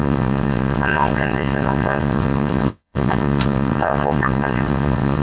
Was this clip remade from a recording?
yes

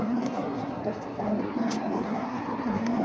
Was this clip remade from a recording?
yes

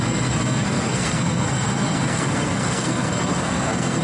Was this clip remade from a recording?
yes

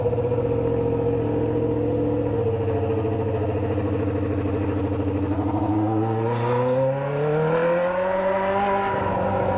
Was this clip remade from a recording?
no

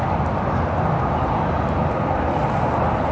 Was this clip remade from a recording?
no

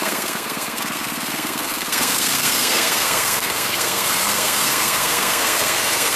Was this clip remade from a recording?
yes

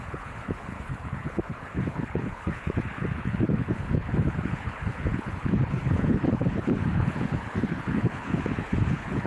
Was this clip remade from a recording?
yes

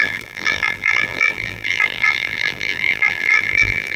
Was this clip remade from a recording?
yes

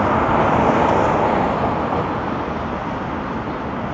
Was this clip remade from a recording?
no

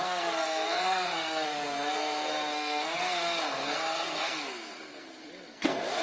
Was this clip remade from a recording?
yes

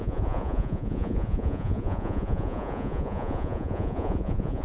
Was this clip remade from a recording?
yes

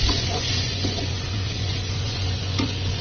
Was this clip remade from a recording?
yes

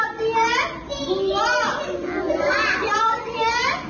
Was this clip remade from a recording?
no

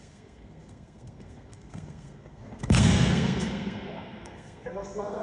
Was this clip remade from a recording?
yes